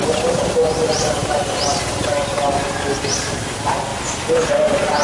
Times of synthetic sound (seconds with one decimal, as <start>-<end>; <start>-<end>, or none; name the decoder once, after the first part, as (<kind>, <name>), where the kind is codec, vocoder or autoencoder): 0.0-1.2 (vocoder, BigVGAN v2); 2.6-5.0